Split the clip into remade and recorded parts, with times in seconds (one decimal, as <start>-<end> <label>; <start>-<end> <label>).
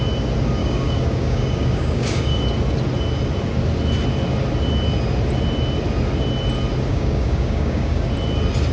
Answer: 0.0-0.6 recorded; 0.6-2.4 remade; 2.4-6.9 recorded; 6.9-8.1 remade; 8.1-8.7 recorded